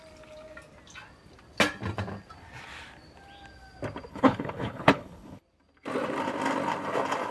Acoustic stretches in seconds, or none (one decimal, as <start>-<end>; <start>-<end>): 0.0-4.1; 5.4-7.3